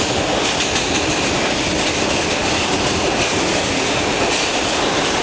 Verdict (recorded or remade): recorded